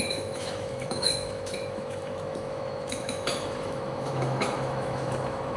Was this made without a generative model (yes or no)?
no